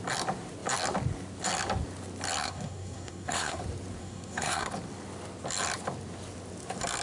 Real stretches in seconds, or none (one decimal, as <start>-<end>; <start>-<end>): 0.0-2.4; 3.6-4.0; 4.7-7.0